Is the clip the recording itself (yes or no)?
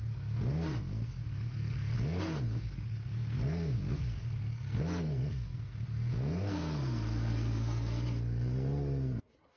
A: no